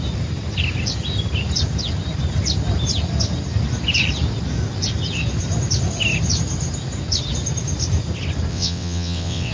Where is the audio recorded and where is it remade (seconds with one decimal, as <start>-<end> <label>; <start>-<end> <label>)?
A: 0.0-8.5 recorded; 8.5-9.5 remade